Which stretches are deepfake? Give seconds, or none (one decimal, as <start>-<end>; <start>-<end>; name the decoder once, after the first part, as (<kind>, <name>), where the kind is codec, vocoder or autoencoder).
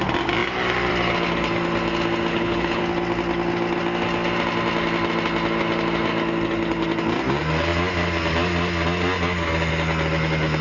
2.3-2.8 (codec, HILCodec)